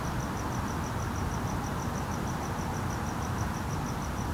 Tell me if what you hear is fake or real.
real